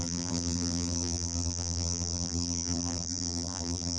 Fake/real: fake